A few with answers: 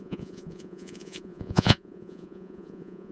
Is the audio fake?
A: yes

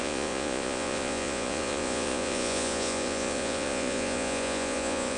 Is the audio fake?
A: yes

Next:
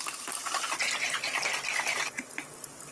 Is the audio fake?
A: no